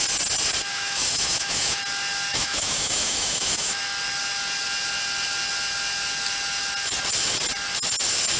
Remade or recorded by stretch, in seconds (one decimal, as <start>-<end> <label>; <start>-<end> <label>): 0.0-0.7 recorded; 0.7-1.8 remade; 1.8-2.3 recorded; 2.3-3.8 remade; 3.8-8.4 recorded